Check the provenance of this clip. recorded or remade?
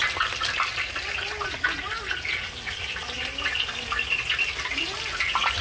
recorded